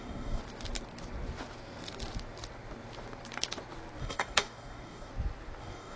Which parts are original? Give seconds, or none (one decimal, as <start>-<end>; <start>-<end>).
0.4-4.0; 5.1-5.6